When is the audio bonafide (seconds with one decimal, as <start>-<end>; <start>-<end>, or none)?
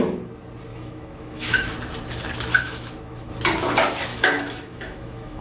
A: 0.0-0.7; 1.7-2.6; 3.3-4.1